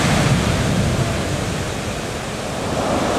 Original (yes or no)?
yes